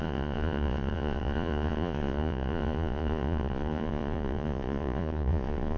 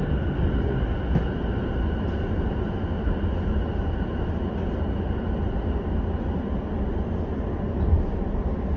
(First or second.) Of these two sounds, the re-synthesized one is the first